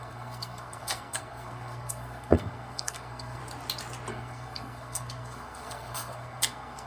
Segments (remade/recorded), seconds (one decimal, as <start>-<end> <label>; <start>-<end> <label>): 0.0-3.4 remade; 3.4-4.1 recorded; 4.1-6.9 remade